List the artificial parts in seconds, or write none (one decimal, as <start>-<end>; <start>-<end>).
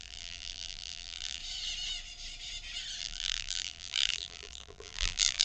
0.0-1.4; 3.0-5.4